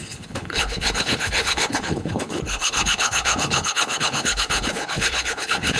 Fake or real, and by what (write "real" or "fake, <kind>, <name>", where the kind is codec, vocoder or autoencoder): fake, codec, HILCodec